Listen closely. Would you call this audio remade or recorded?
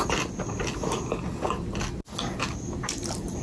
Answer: recorded